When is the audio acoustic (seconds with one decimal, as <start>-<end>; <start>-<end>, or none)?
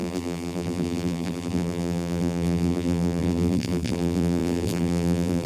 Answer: none